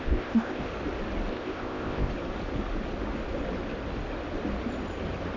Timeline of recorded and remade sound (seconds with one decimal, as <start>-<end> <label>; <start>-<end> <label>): 0.0-0.7 remade; 0.7-1.3 recorded; 1.3-2.1 remade; 2.1-5.4 recorded